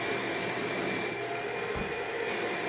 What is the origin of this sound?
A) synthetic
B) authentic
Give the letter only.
A